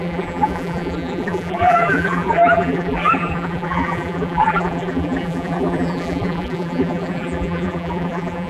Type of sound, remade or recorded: remade